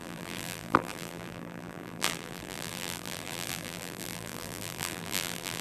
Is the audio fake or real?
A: fake